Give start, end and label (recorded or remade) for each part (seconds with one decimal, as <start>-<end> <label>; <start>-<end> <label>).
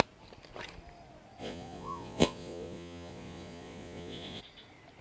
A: 0.0-1.4 recorded; 1.4-4.4 remade; 4.4-5.0 recorded